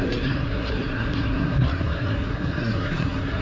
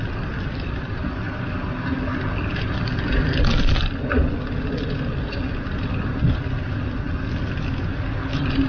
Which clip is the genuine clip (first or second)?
second